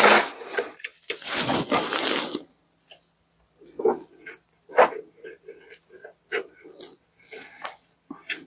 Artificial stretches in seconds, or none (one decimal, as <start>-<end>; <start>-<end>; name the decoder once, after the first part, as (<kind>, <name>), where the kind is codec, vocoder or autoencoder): none